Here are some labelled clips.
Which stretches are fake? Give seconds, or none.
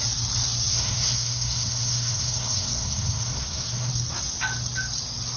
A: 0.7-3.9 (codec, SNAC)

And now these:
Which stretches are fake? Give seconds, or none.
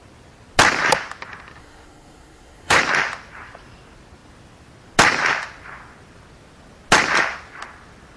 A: 1.6-2.8 (codec, SNAC)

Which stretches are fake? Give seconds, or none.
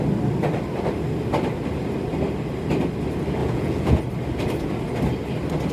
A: 3.4-4.0 (vocoder, Vocos)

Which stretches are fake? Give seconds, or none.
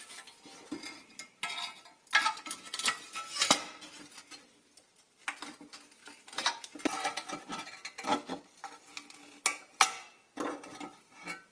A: none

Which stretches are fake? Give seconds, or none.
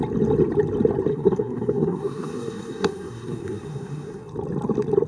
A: 1.1-4.2 (codec, SNAC)